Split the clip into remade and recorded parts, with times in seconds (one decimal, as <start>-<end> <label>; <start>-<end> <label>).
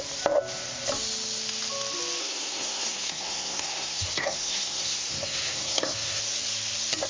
0.0-2.2 recorded; 2.2-6.2 remade; 6.2-7.1 recorded